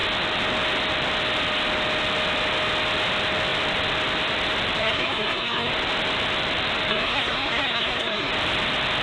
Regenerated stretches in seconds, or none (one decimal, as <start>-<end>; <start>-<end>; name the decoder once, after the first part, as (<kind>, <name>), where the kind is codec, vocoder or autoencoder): 4.8-5.7 (codec, SNAC); 6.9-8.3

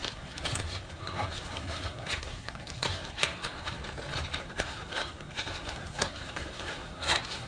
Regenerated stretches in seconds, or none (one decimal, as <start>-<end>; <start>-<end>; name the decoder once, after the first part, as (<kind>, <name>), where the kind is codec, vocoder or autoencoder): 0.0-3.8 (codec, SNAC); 4.4-7.5